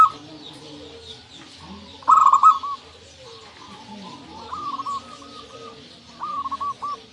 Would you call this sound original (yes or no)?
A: no